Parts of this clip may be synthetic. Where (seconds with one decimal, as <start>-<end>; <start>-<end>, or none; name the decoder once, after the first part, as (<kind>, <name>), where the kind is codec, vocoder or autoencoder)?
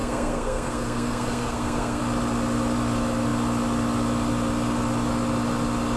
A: 0.0-2.0 (codec, SNAC)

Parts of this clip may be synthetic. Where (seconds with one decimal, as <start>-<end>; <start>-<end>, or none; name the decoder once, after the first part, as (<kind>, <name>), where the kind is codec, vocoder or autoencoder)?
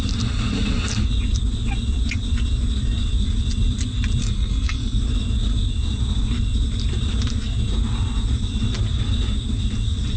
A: 4.2-5.0 (codec, SNAC)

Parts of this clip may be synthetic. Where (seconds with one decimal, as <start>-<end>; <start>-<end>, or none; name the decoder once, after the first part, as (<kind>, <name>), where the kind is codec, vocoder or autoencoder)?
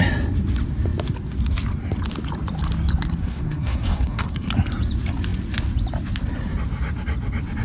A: 3.2-4.5 (codec, SNAC)